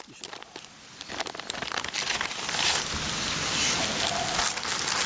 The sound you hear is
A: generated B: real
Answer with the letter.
B